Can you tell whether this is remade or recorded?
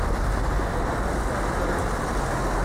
recorded